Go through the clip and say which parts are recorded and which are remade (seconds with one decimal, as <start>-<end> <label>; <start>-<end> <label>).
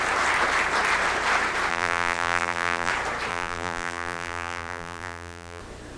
0.0-1.7 recorded; 1.7-2.9 remade; 2.9-3.3 recorded; 3.3-5.6 remade; 5.6-6.0 recorded